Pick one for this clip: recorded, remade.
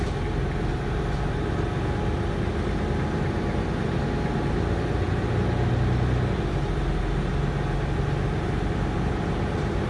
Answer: recorded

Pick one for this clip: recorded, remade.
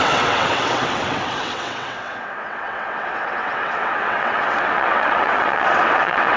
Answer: remade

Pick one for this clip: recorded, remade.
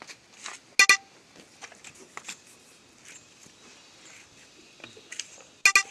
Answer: recorded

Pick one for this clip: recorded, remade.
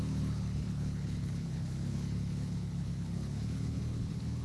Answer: remade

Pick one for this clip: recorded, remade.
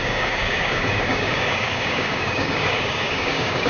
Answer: remade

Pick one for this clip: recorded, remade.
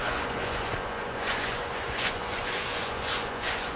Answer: remade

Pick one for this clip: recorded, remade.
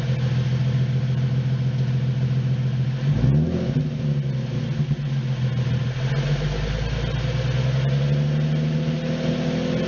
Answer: recorded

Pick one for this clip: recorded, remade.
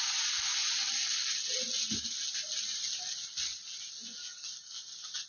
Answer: recorded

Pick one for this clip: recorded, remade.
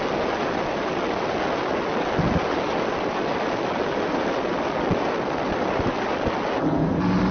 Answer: recorded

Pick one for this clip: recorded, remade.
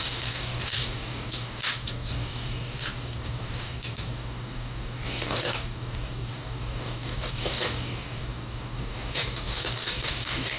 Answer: remade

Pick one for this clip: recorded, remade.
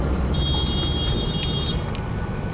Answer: recorded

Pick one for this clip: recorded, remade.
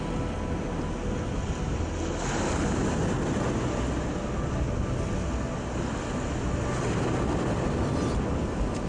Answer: recorded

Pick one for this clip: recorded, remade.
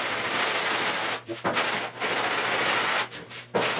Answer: recorded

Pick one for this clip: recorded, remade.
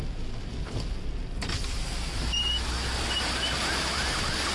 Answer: recorded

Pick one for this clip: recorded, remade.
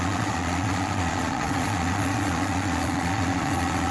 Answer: remade